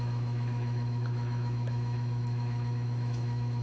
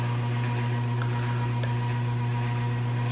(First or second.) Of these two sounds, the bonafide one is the second